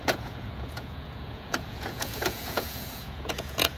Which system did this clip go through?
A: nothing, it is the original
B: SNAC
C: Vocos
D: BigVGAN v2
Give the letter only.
C